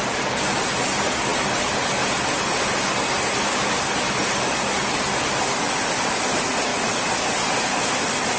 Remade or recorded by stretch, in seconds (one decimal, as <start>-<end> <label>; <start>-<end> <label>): 0.0-8.4 recorded